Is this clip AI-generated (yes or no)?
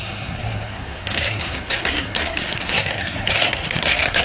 yes